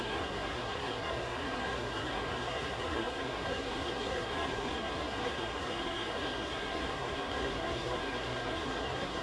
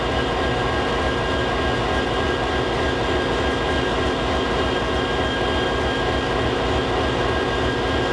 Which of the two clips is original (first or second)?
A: second